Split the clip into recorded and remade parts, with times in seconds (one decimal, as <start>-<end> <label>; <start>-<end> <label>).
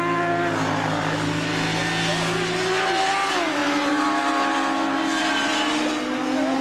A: 0.0-6.6 recorded